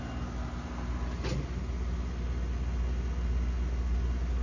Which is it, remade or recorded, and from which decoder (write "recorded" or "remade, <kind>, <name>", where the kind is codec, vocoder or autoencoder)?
recorded